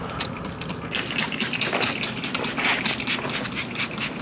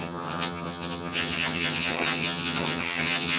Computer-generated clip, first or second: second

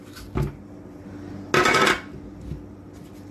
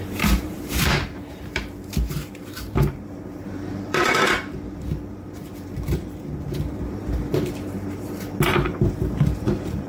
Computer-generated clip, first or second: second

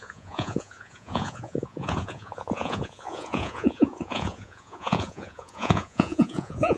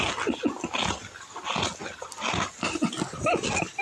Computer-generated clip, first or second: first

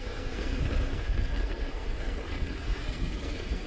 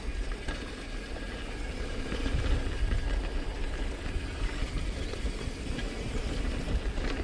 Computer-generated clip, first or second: first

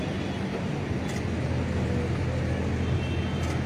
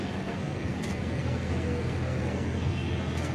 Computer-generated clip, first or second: second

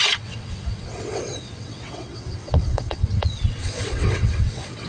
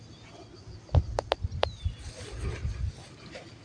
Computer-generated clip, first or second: first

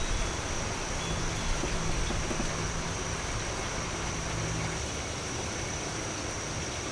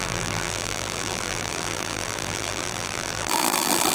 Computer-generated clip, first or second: second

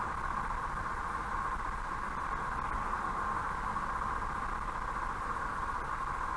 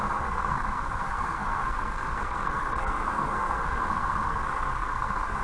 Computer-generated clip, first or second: second